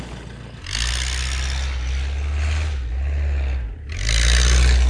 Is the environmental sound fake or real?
real